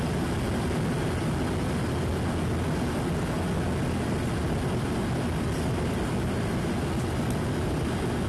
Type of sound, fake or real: real